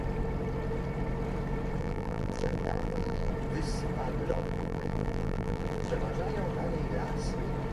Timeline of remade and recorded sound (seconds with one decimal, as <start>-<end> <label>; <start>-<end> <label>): 0.0-1.8 recorded; 1.8-3.3 remade; 3.3-4.3 recorded; 4.3-5.9 remade; 5.9-7.7 recorded